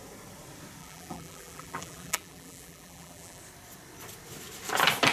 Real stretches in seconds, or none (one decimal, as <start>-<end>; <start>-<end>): 0.0-0.8; 3.4-5.1